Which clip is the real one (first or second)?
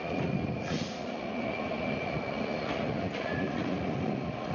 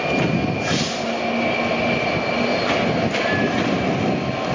second